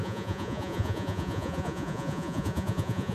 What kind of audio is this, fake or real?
fake